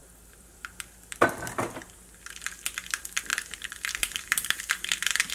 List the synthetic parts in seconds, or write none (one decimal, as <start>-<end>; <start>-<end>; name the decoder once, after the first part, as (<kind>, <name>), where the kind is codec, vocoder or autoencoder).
0.0-1.8 (vocoder, BigVGAN v2); 3.3-4.6